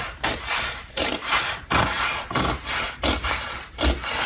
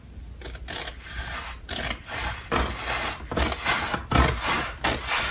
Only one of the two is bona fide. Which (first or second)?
second